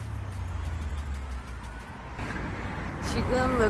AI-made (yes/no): no